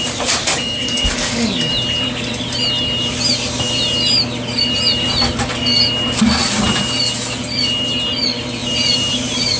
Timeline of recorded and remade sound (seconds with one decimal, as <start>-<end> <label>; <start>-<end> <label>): 0.0-0.4 recorded; 0.4-1.7 remade; 1.7-9.6 recorded